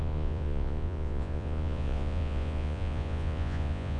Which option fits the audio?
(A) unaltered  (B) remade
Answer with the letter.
B